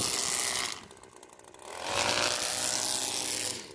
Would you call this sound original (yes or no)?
yes